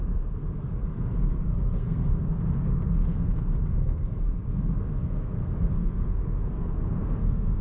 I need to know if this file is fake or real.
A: fake